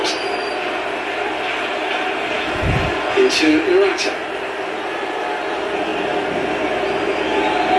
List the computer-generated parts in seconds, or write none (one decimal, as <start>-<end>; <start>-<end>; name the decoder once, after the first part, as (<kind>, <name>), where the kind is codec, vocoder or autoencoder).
none